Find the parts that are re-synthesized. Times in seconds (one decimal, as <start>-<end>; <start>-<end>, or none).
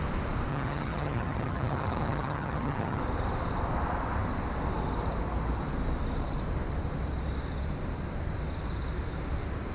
0.5-3.0